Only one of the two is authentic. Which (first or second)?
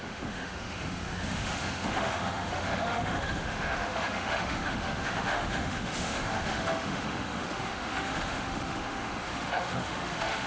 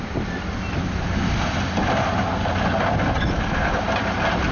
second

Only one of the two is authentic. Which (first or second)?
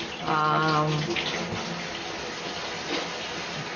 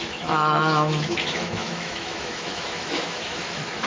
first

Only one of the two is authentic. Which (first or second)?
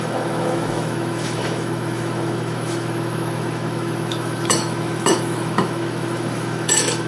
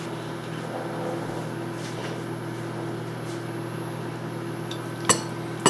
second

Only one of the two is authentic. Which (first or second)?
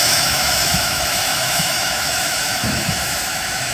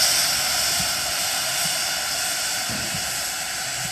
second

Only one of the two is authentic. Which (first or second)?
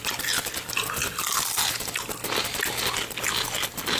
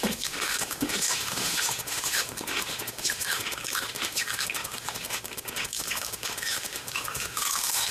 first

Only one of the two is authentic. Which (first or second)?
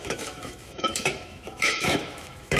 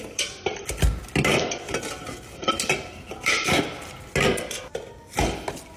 second